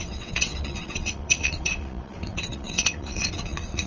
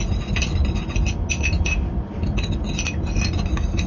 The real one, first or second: second